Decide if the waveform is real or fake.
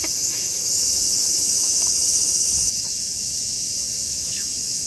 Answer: fake